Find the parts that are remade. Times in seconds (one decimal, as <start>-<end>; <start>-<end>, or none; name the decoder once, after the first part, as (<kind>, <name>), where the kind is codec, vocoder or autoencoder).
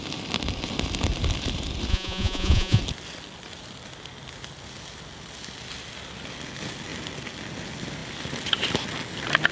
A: 1.9-2.8 (vocoder, Vocos)